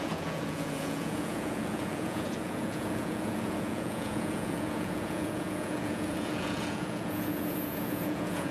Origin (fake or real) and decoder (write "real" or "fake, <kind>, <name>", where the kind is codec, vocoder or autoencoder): fake, vocoder, Vocos